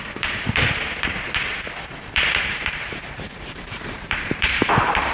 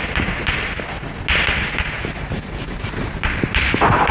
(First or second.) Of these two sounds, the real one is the second